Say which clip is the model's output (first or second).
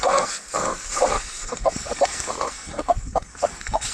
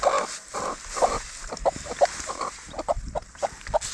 first